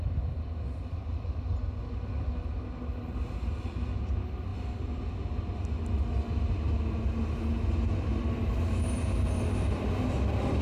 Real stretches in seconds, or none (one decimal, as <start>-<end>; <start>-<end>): 0.0-10.6